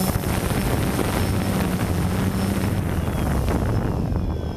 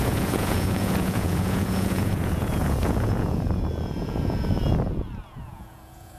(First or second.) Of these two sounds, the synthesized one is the second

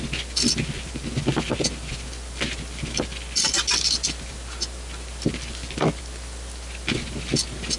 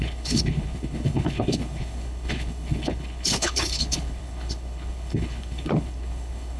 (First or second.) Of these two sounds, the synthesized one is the second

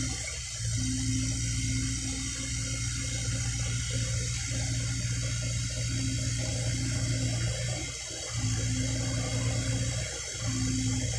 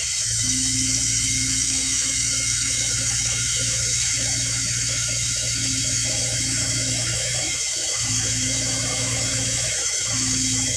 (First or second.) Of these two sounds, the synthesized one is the second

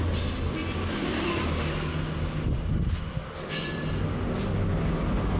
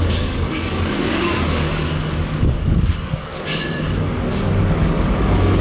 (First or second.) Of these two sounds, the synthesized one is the second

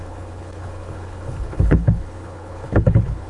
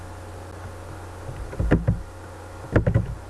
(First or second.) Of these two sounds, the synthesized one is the first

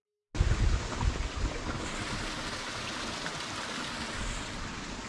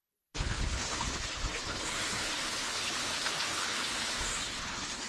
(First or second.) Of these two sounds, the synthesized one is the second